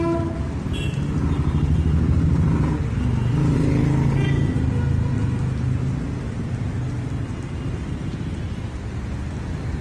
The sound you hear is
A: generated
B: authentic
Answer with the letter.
B